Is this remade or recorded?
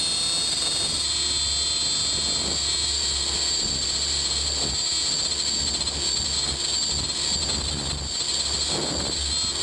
recorded